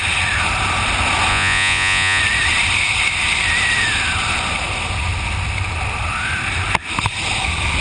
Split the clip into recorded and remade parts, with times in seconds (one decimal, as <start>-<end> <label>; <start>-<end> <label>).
0.0-1.3 recorded; 1.3-2.2 remade; 2.2-7.8 recorded